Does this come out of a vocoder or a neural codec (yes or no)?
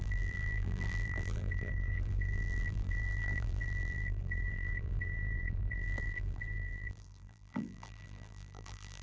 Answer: yes